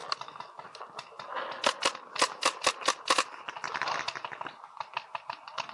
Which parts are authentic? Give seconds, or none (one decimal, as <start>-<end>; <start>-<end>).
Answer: 0.0-5.7